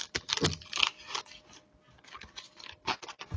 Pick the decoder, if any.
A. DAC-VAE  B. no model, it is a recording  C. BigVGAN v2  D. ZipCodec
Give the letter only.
B